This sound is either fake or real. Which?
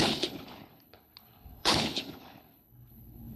fake